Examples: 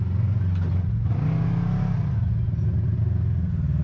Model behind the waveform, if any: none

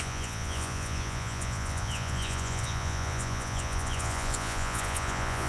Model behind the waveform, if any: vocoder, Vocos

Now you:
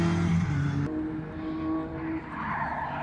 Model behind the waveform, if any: none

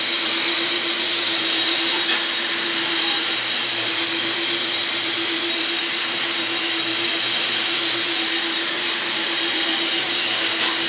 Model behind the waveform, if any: vocoder, BigVGAN v2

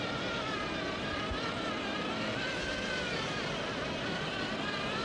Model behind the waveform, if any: vocoder, BigVGAN v2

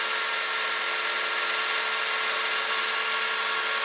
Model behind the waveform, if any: none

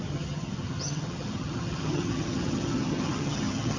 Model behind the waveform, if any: vocoder, HiFi-GAN